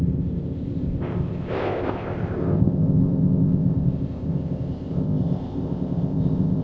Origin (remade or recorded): remade